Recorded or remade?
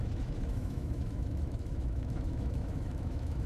remade